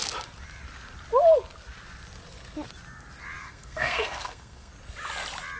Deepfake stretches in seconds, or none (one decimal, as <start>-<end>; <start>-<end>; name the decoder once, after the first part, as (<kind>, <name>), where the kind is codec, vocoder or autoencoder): 3.4-4.7 (codec, SNAC)